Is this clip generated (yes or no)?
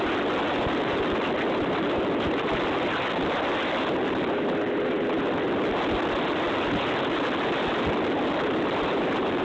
no